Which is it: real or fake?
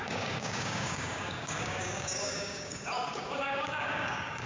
fake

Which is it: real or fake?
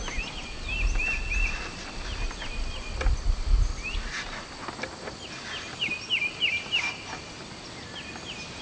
real